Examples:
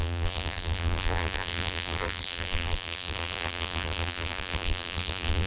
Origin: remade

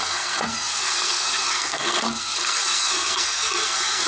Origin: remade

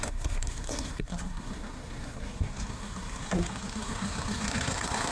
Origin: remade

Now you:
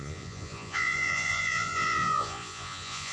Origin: remade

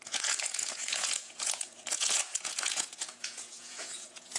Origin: remade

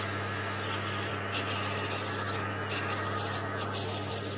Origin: recorded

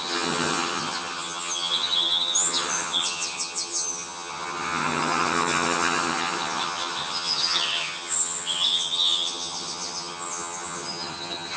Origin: remade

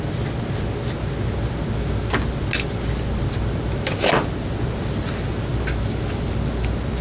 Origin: recorded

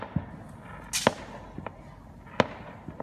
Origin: recorded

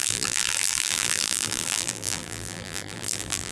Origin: remade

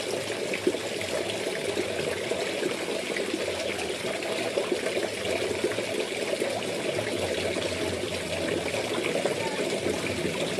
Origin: recorded